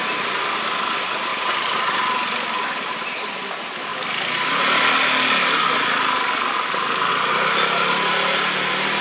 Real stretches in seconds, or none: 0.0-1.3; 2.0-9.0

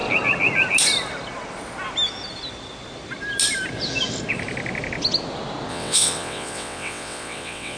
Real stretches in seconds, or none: 0.0-5.7

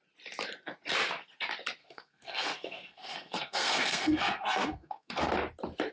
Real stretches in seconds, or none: 0.0-1.8; 5.3-5.9

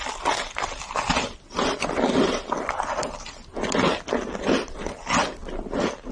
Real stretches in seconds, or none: 0.0-6.1

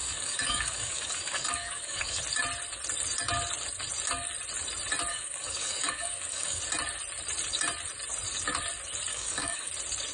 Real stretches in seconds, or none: 2.2-5.1; 6.6-9.1; 9.7-10.1